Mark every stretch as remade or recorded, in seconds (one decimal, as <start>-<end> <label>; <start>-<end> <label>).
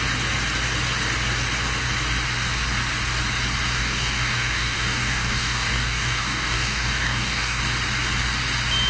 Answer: 0.0-3.7 recorded; 3.7-7.6 remade; 7.6-8.9 recorded